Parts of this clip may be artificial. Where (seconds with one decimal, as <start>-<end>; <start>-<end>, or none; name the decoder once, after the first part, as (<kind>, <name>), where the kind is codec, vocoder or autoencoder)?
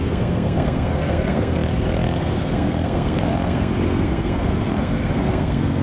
0.0-5.8 (codec, SNAC)